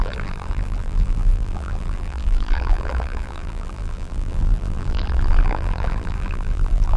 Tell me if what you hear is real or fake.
fake